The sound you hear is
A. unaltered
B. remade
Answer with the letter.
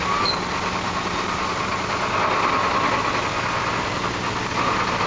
A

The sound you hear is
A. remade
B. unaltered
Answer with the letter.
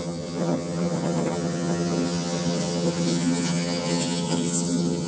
A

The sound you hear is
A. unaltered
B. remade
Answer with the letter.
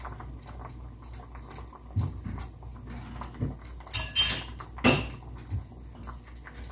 A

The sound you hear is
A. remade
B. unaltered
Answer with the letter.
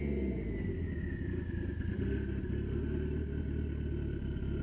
B